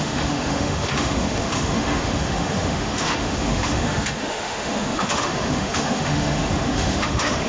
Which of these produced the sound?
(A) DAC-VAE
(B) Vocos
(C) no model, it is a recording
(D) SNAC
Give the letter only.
A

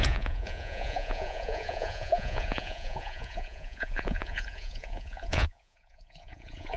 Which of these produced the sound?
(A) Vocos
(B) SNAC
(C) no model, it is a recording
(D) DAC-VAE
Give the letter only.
A